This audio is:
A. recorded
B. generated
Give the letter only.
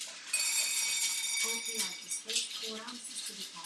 A